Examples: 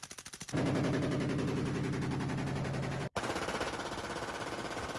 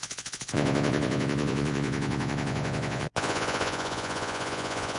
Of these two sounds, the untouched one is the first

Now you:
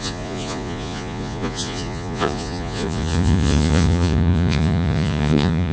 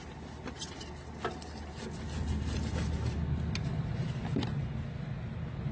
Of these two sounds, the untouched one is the second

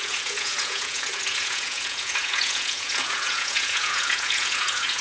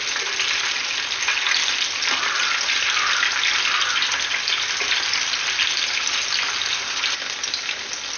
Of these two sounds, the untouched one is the second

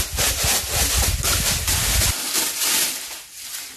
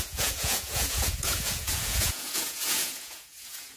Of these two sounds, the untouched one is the first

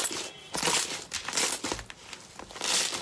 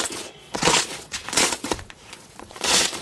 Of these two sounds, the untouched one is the first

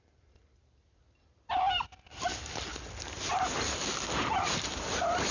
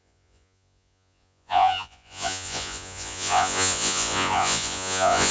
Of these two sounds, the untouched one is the first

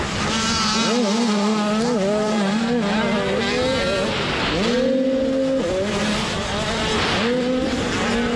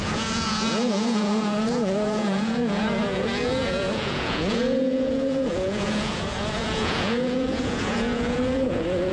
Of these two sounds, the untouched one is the first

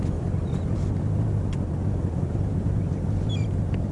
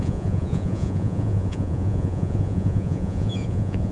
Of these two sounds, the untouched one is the first